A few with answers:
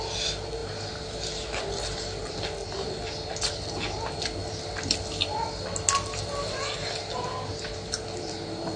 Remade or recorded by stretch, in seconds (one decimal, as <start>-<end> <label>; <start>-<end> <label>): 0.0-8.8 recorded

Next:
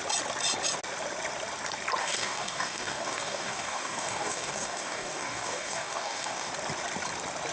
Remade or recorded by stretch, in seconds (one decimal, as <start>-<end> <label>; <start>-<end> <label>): 0.0-2.0 recorded; 2.0-6.5 remade; 6.5-7.5 recorded

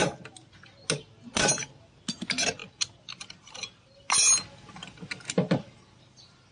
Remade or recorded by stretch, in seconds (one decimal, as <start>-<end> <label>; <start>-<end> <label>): 0.0-6.5 recorded

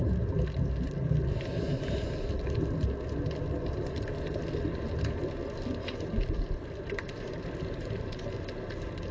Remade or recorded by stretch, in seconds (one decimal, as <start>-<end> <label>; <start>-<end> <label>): 0.0-5.8 recorded; 5.8-8.7 remade; 8.7-9.1 recorded

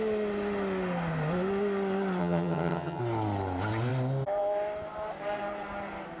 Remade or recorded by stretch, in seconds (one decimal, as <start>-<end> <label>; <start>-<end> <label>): 0.0-2.2 recorded; 2.2-3.0 remade; 3.0-6.2 recorded

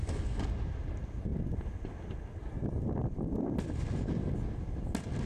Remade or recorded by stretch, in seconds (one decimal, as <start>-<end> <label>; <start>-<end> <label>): 0.0-0.5 remade; 0.5-5.3 recorded